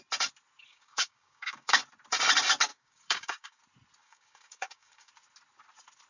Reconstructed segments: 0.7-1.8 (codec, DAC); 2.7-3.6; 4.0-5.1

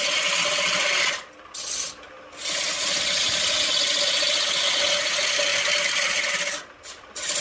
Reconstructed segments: 5.5-6.3 (vocoder, BigVGAN v2)

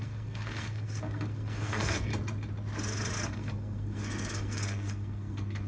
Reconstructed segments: 0.0-2.1 (codec, SNAC); 3.2-5.7

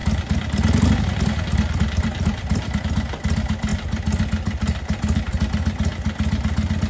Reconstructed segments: 0.0-2.8 (vocoder, BigVGAN v2); 3.7-5.2

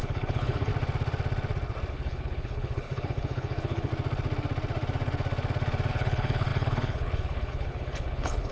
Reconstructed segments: 0.0-0.7 (codec, HILCodec); 1.9-3.9; 5.9-8.5